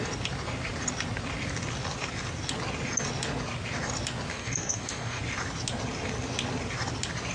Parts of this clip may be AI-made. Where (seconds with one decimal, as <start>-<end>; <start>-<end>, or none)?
4.3-5.2